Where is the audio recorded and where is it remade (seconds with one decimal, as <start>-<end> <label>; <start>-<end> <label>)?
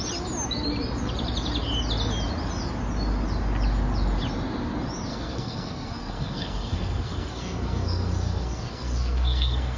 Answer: 0.0-5.1 recorded; 5.1-9.8 remade